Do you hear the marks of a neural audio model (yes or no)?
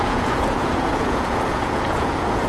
yes